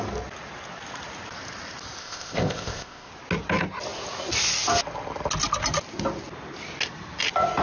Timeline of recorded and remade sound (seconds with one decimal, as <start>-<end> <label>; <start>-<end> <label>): 0.0-2.0 recorded; 2.0-3.1 remade; 3.1-7.6 recorded